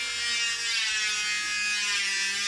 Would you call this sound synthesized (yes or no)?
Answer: no